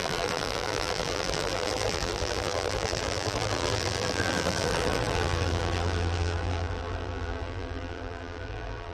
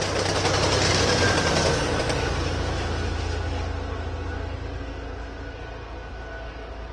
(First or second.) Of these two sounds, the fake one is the first